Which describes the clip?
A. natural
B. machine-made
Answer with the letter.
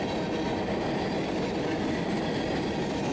A